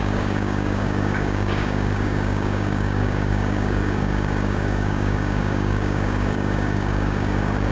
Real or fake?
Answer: fake